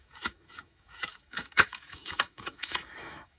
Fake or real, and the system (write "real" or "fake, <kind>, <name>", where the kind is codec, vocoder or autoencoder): fake, autoencoder, DAC-VAE